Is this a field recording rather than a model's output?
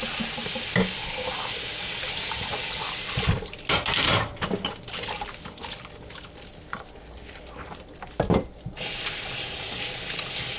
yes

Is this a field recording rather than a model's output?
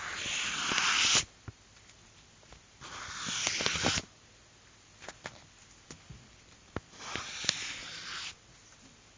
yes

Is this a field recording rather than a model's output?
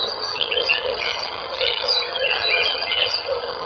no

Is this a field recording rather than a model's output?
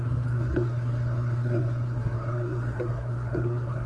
no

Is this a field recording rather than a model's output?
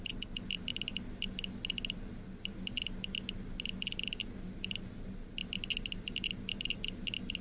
yes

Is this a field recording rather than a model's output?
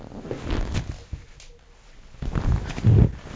yes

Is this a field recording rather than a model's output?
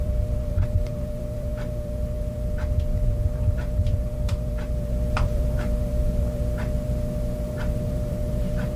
no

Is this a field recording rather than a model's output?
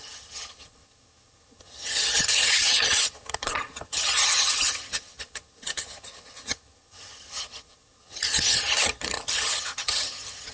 no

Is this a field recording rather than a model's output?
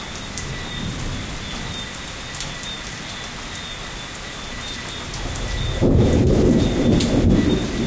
yes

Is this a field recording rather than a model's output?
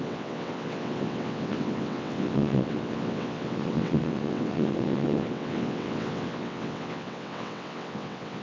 no